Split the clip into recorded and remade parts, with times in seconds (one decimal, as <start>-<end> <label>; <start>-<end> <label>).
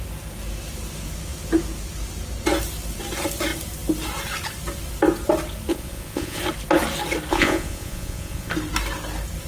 0.0-5.7 recorded; 5.7-6.4 remade; 6.4-7.3 recorded; 7.3-8.5 remade; 8.5-9.5 recorded